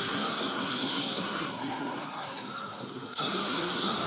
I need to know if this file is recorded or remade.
remade